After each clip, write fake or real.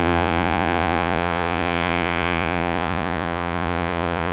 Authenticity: fake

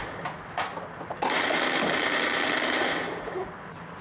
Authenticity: real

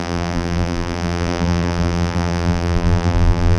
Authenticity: fake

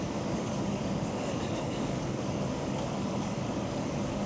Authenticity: fake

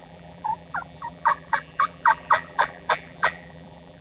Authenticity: fake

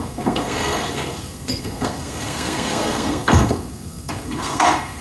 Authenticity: fake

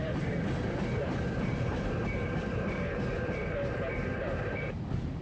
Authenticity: fake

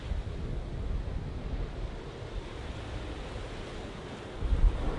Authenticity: real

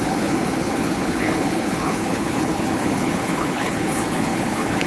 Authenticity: fake